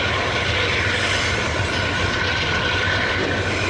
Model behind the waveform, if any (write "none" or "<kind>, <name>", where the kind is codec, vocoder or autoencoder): none